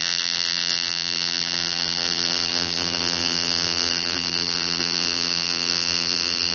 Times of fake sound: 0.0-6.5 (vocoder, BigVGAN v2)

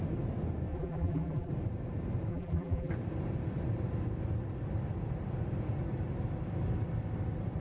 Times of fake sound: 0.7-1.5 (vocoder, BigVGAN v2); 2.3-2.9

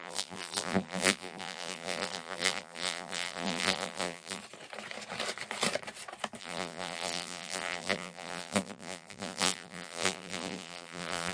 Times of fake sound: 0.0-4.4 (vocoder, BigVGAN v2); 6.4-11.3

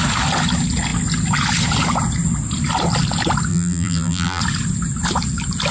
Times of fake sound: 3.5-4.4 (vocoder, BigVGAN v2)

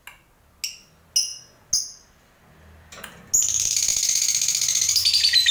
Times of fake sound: none

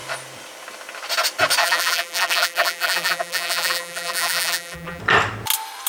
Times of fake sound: 1.6-5.0 (vocoder, BigVGAN v2)